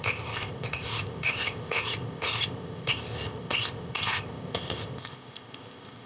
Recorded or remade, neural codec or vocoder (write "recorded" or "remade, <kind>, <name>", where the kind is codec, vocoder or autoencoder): remade, codec, ZipCodec